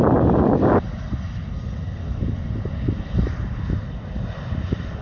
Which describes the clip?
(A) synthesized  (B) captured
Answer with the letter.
B